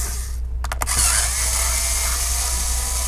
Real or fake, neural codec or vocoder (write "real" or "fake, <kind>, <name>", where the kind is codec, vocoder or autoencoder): real